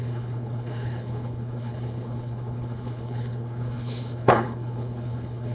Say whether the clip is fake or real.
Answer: fake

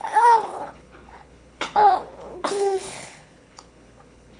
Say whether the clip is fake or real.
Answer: fake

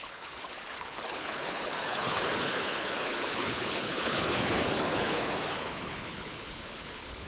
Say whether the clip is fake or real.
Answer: fake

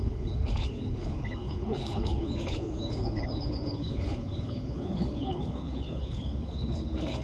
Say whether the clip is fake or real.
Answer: fake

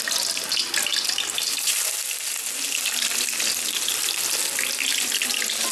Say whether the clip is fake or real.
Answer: real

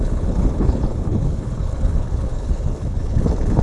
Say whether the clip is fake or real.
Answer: fake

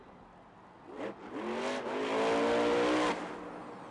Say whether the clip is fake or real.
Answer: real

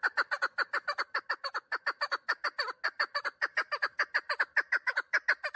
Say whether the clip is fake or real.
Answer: real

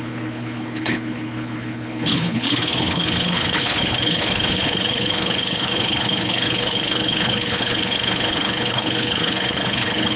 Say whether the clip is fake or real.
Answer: fake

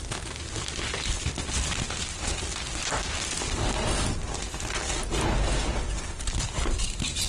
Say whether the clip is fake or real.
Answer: real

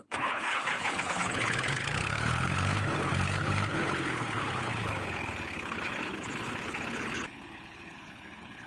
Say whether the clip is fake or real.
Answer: fake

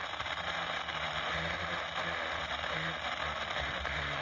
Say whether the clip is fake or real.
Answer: real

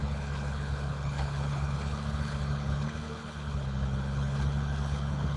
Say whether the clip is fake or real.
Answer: fake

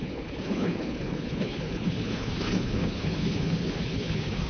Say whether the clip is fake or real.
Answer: fake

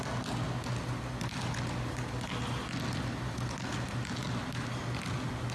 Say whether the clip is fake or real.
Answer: real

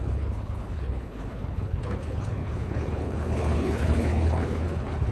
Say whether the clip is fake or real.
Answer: fake